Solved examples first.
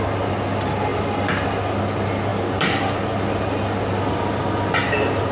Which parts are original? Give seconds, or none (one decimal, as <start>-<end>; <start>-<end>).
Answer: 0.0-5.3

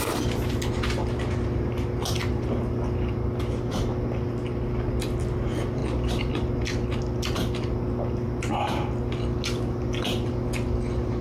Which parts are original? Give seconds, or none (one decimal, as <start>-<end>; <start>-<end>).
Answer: 0.0-11.2

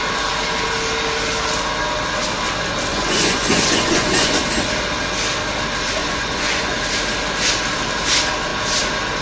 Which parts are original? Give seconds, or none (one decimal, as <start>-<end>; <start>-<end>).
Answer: 0.0-2.9; 4.4-6.0; 6.8-9.2

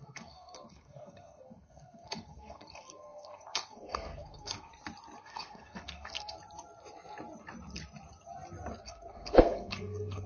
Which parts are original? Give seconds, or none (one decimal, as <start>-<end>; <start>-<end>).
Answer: 4.7-5.2; 6.4-8.8